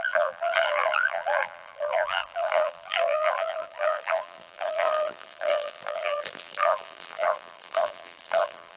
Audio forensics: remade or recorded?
remade